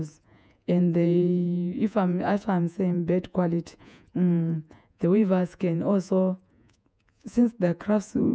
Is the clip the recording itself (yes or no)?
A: no